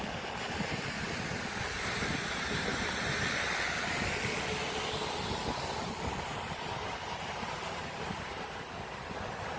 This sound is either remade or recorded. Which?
remade